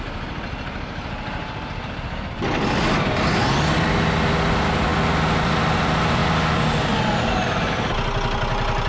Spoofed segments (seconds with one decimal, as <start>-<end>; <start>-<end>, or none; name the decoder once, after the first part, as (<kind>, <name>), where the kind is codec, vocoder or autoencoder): none